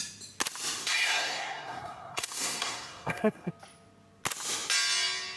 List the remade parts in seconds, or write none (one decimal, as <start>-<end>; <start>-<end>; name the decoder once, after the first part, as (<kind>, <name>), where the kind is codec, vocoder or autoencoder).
0.8-3.5 (codec, SNAC)